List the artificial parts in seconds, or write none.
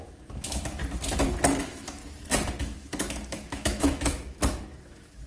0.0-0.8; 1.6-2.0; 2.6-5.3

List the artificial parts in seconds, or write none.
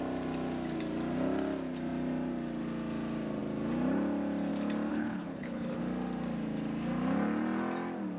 4.9-5.8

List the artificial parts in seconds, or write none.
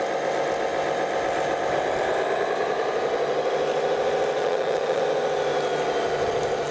4.4-5.0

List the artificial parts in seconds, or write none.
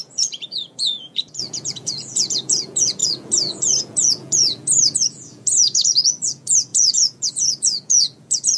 0.0-8.6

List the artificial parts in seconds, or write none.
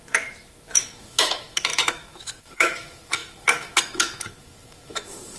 0.0-5.4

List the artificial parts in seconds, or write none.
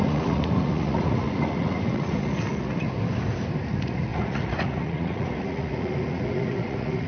0.0-2.9; 3.6-7.1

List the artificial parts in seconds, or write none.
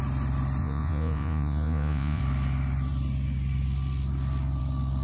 0.6-2.2